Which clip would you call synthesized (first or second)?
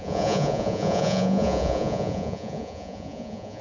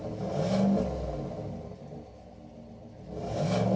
first